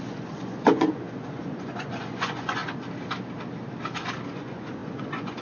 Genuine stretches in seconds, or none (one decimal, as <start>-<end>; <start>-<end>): 2.6-4.3